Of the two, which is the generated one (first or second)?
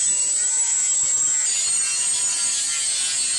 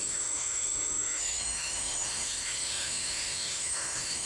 second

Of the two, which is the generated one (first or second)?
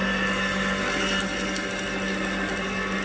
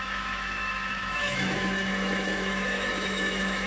second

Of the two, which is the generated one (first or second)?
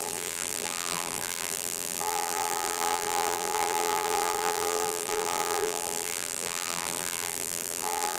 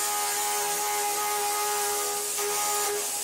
first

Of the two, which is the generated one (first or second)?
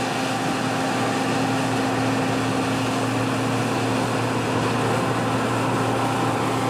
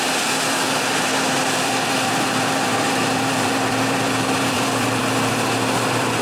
second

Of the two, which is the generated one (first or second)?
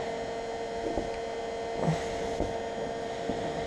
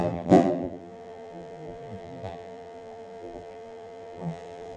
second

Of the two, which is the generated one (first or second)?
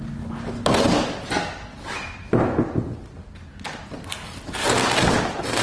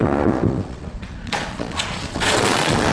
second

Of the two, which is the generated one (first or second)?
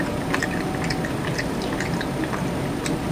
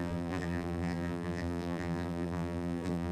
second